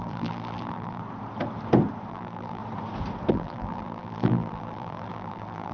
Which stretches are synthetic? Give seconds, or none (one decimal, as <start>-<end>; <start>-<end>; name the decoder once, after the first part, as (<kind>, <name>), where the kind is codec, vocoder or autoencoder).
0.0-1.0 (vocoder, BigVGAN v2); 2.1-2.6; 3.3-5.7